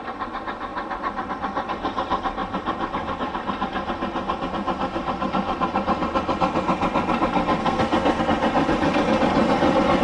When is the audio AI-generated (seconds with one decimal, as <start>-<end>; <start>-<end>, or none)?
7.6-8.2